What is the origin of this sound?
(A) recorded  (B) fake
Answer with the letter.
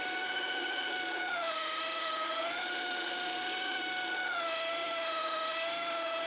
B